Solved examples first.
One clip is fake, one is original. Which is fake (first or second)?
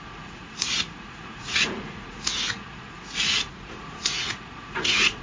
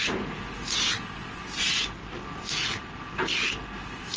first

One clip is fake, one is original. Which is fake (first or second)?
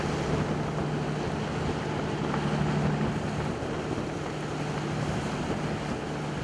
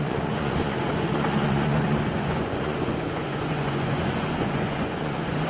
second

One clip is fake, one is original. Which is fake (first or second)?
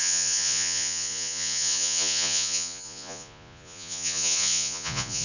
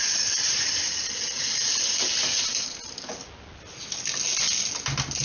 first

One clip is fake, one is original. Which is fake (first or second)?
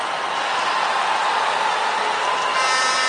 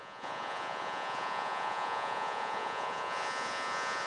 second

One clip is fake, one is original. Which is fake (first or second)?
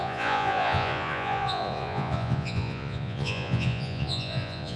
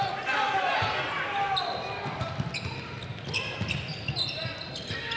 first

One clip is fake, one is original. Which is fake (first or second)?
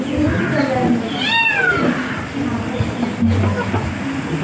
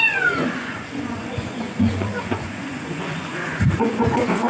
second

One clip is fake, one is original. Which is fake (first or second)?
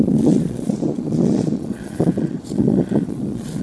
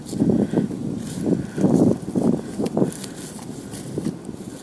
first